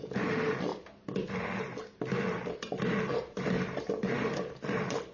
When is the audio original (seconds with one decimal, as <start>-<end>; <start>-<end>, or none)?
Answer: 0.0-5.1